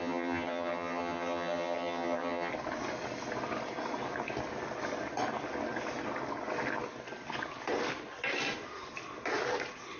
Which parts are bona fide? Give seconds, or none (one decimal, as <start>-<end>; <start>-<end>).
2.5-10.0